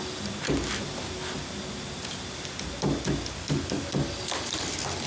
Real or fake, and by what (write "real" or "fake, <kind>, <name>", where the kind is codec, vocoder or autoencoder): real